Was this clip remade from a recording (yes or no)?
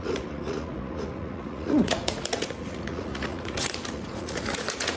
yes